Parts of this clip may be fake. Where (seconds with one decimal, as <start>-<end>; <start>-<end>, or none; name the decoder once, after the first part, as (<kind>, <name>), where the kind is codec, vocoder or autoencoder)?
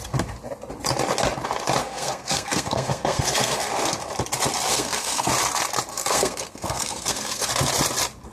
1.8-3.7 (codec, SNAC); 4.7-5.3; 5.9-7.5